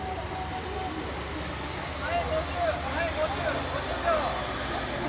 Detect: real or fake real